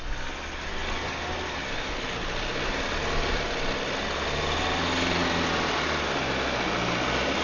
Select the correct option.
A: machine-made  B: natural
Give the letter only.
B